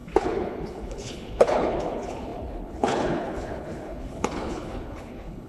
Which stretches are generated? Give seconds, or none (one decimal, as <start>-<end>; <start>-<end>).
0.0-5.5